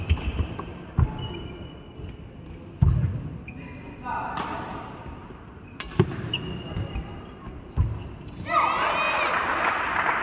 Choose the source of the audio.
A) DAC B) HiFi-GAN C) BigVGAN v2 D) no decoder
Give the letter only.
D